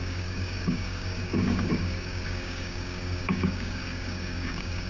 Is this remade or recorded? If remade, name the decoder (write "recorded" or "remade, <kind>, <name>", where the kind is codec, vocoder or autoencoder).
remade, codec, DAC